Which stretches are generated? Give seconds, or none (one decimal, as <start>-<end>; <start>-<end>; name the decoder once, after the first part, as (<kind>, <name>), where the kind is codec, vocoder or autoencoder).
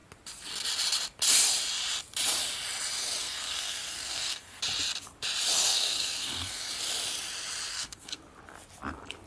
3.2-4.6 (codec, SNAC); 5.7-6.6; 7.7-8.2